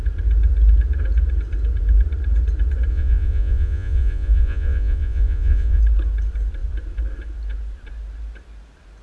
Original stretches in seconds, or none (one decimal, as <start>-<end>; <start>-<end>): 0.0-2.9; 5.8-9.0